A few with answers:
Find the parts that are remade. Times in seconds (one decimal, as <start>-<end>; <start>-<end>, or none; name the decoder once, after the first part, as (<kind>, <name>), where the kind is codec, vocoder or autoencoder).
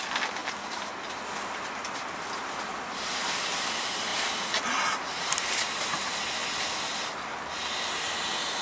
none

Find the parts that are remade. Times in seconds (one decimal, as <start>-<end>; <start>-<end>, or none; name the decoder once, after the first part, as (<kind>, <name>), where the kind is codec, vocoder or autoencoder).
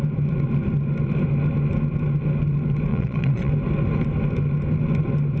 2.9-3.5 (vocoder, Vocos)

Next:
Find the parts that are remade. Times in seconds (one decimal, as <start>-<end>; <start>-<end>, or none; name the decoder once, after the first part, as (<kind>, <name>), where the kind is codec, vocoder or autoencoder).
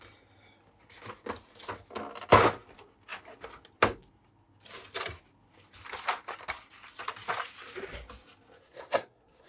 8.6-9.5 (codec, SNAC)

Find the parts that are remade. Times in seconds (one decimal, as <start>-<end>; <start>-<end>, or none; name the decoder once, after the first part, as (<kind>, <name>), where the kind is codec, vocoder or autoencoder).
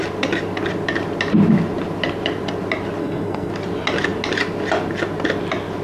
3.0-3.5 (codec, SNAC)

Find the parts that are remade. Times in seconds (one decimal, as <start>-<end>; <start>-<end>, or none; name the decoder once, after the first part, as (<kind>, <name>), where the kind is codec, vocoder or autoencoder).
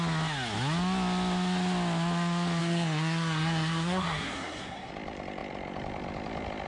2.6-4.9 (codec, SNAC)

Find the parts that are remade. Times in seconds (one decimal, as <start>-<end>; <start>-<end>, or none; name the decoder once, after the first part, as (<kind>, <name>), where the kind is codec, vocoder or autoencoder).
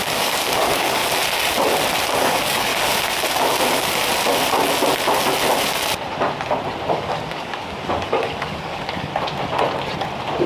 0.0-1.0 (codec, DAC); 2.2-2.7; 6.9-9.1